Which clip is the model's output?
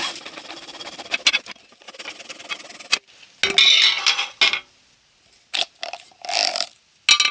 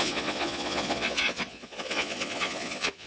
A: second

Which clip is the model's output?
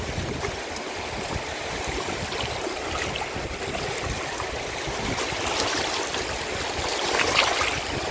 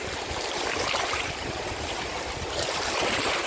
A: second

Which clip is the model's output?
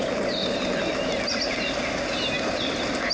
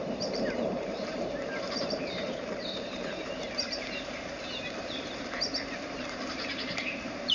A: second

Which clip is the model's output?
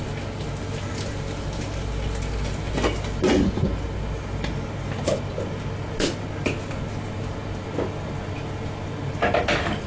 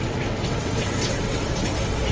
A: second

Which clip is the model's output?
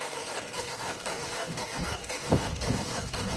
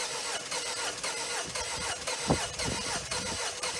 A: first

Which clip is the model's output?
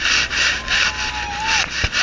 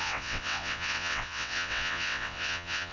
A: second